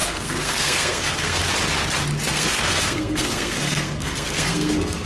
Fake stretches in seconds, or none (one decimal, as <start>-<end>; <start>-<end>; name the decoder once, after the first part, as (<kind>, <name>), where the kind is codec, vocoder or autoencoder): 0.0-1.4 (codec, SNAC); 2.3-5.1